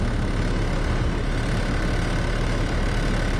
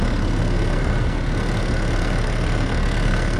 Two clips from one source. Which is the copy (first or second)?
second